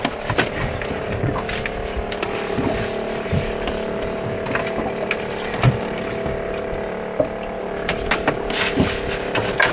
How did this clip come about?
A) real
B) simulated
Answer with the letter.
A